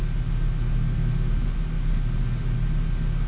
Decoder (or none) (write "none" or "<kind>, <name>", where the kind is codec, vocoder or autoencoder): none